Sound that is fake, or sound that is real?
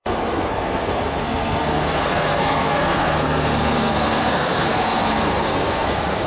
fake